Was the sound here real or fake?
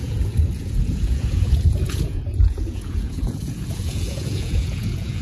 fake